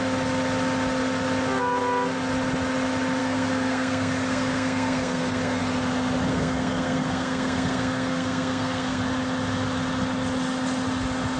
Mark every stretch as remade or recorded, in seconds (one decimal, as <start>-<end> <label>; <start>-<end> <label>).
0.0-3.2 recorded; 3.2-5.6 remade; 5.6-6.3 recorded; 6.3-9.0 remade; 9.0-11.4 recorded